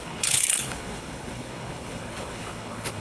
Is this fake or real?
fake